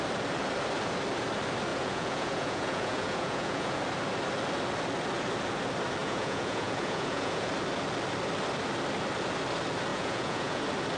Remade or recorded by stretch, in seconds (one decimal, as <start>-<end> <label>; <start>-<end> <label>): 0.0-1.7 recorded; 1.7-3.8 remade; 3.8-6.0 recorded; 6.0-7.5 remade; 7.5-9.9 recorded; 9.9-10.6 remade; 10.6-11.0 recorded